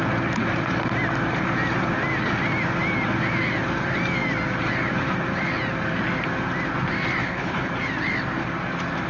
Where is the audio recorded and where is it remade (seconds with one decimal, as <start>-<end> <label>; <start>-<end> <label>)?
0.0-7.2 recorded; 7.2-7.7 remade; 7.7-9.1 recorded